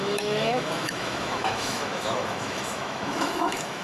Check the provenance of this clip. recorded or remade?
remade